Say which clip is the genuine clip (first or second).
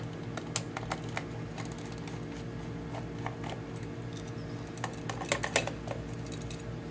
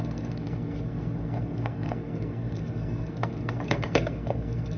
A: first